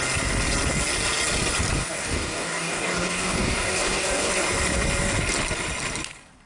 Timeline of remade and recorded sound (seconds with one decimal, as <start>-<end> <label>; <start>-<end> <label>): 0.0-1.8 recorded; 1.8-4.3 remade; 4.3-6.5 recorded